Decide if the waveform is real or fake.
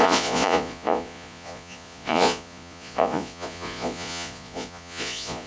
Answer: fake